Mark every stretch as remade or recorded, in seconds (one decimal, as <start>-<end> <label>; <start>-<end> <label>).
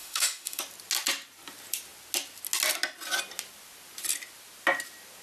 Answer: 0.0-0.6 remade; 0.6-5.2 recorded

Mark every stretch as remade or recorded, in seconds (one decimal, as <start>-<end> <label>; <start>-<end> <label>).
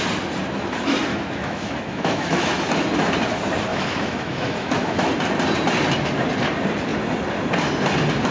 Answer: 0.0-1.1 recorded; 1.1-2.6 remade; 2.6-3.7 recorded; 3.7-5.1 remade; 5.1-8.3 recorded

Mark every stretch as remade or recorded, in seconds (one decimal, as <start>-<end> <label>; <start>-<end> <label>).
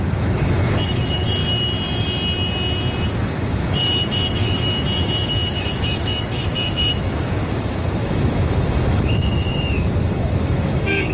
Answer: 0.0-1.4 remade; 1.4-3.2 recorded; 3.2-11.1 remade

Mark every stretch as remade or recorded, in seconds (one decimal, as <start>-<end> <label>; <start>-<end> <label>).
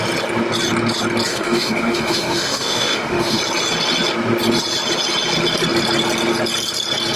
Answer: 0.0-1.3 recorded; 1.3-3.4 remade; 3.4-7.2 recorded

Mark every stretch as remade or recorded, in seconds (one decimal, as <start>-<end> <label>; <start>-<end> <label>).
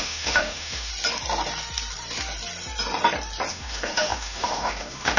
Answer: 0.0-0.9 remade; 0.9-3.5 recorded; 3.5-5.2 remade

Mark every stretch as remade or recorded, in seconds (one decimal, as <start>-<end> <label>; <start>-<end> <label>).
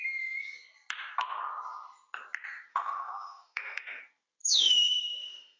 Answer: 0.0-2.7 recorded; 2.7-4.0 remade; 4.0-4.4 recorded; 4.4-5.6 remade